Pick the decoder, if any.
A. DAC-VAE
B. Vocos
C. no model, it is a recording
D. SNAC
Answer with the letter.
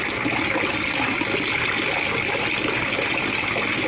C